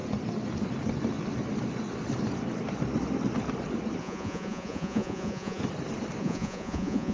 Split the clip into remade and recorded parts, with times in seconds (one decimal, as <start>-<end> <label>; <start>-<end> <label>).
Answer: 0.0-4.0 recorded; 4.0-5.6 remade; 5.6-6.2 recorded; 6.2-7.1 remade